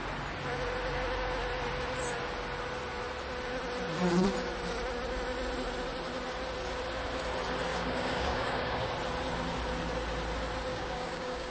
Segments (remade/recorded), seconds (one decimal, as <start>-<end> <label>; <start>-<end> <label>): 0.0-7.7 recorded; 7.7-8.9 remade; 8.9-10.7 recorded; 10.7-11.5 remade